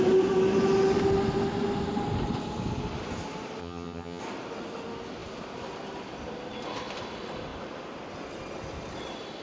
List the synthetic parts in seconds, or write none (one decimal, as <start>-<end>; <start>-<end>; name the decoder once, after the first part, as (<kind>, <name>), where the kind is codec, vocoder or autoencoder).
3.6-4.2 (vocoder, HiFi-GAN)